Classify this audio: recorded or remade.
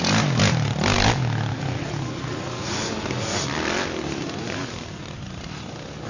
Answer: recorded